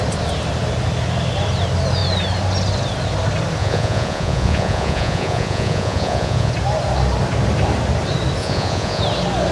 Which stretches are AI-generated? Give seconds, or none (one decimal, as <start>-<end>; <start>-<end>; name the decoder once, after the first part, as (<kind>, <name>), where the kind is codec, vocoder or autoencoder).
3.6-6.5 (vocoder, Vocos); 8.4-9.0